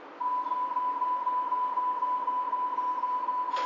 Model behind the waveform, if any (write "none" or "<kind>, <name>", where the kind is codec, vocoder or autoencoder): none